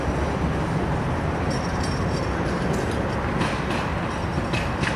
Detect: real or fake real